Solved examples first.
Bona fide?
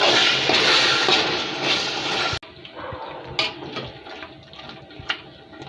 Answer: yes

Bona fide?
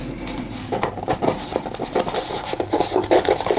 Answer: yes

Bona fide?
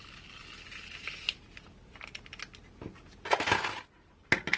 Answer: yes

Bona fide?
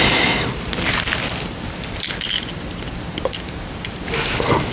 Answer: yes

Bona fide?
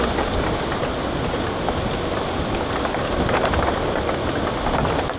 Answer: yes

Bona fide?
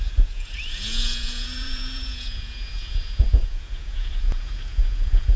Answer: no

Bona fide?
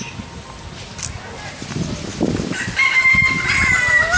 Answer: yes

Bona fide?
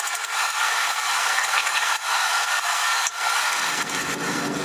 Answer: no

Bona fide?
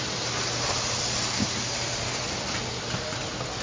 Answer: yes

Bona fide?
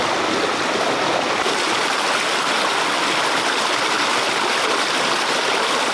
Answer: yes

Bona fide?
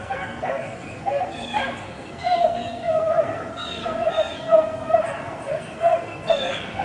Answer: no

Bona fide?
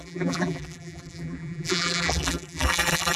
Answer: no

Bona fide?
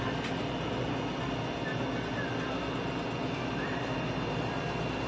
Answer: yes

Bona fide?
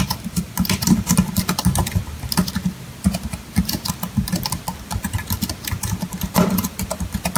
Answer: no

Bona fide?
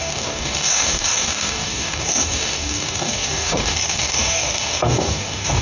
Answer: no